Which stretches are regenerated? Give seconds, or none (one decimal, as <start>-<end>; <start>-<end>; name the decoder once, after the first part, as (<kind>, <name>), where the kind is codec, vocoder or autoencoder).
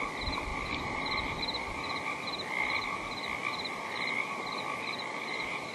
none